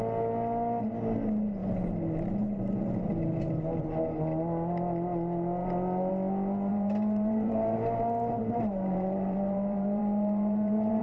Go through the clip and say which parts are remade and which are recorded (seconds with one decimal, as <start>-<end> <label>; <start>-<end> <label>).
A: 0.0-6.7 recorded; 6.7-11.0 remade